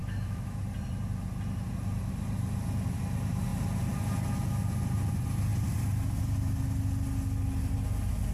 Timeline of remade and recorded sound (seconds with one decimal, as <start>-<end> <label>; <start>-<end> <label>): 0.0-0.6 remade; 0.6-8.3 recorded